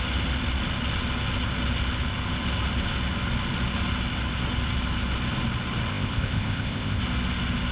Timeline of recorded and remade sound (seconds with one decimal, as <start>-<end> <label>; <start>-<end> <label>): 0.0-5.9 recorded; 5.9-7.0 remade; 7.0-7.7 recorded